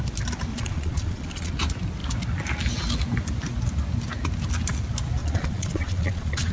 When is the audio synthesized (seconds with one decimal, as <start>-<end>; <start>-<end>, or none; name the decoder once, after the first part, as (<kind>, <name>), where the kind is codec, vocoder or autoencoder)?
0.5-1.5 (vocoder, Vocos); 5.2-6.5